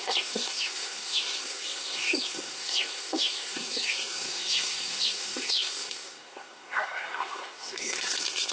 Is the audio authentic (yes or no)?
no